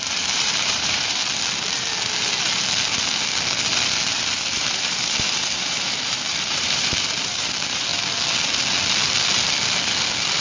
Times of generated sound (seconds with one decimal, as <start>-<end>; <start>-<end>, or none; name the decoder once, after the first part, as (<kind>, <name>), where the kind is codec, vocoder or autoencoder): 0.0-1.2 (vocoder, BigVGAN v2); 4.1-7.9